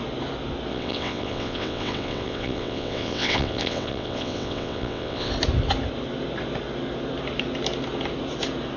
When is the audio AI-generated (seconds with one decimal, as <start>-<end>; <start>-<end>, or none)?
0.7-5.3